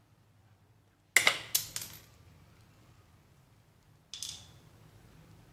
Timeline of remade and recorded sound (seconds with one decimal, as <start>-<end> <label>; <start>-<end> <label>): 0.0-5.5 recorded